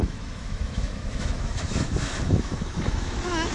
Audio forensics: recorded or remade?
remade